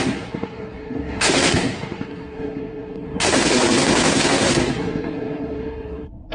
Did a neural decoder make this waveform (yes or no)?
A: yes